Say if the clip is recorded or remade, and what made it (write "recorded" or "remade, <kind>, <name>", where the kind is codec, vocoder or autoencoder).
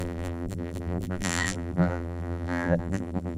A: remade, vocoder, BigVGAN v2